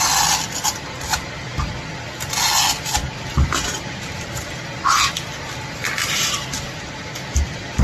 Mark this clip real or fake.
real